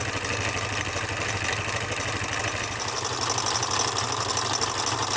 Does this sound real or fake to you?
real